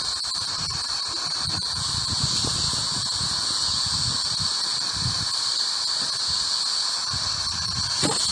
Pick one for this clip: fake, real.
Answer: real